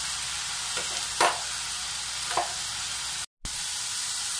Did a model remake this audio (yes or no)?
no